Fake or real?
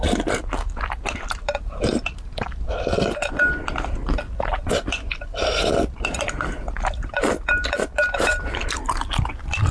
real